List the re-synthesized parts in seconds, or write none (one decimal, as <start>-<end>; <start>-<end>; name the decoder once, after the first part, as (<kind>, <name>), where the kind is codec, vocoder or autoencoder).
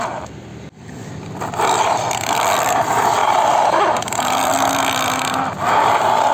0.0-0.5 (vocoder, BigVGAN v2); 1.6-3.2